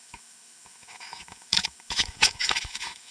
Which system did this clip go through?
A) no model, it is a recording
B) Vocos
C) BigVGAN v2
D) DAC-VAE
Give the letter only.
D